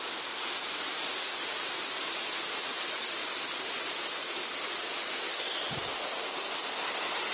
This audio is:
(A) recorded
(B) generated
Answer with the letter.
A